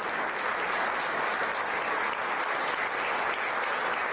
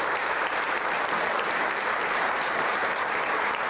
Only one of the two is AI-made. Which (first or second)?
second